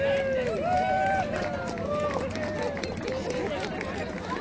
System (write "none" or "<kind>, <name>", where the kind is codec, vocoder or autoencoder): none